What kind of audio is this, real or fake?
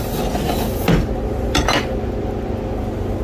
real